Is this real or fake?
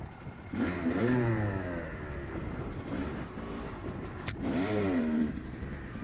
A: fake